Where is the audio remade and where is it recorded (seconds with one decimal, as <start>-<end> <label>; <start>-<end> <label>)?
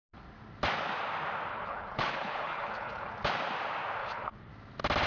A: 0.0-1.5 recorded; 1.5-3.1 remade; 3.1-4.0 recorded; 4.0-4.5 remade; 4.5-5.1 recorded